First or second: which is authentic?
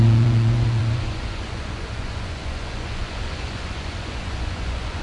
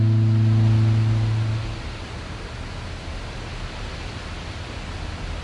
second